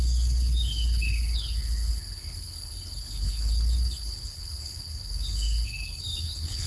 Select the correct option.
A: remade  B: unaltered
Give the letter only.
A